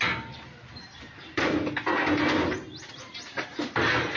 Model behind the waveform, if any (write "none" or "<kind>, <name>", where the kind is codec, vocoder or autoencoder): none